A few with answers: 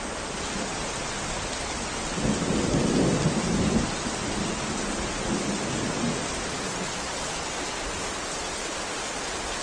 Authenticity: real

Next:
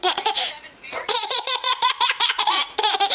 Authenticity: fake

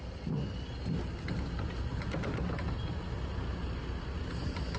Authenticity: real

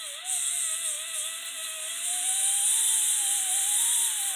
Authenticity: real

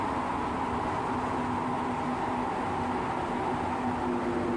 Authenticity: real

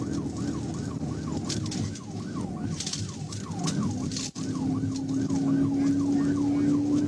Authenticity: real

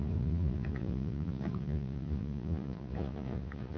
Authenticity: fake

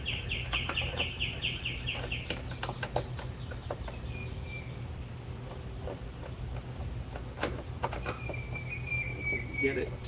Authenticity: real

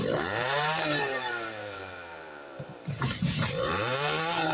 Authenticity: fake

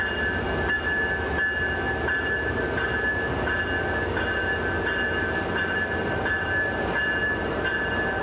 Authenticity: real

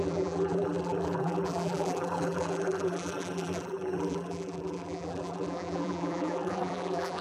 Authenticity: fake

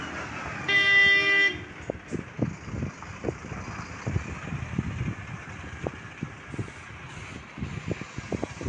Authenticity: real